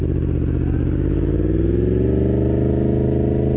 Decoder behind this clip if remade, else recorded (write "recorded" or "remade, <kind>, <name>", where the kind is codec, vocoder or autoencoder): recorded